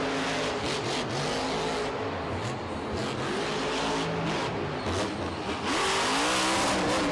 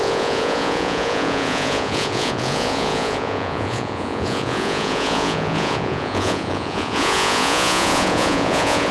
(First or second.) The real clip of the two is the first